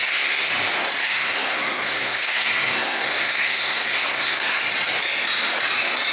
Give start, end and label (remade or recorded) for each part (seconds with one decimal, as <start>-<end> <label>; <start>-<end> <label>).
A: 0.0-0.5 remade; 0.5-1.0 recorded; 1.0-4.6 remade; 4.6-6.1 recorded